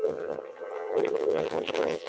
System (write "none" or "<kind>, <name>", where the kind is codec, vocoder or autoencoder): vocoder, HiFi-GAN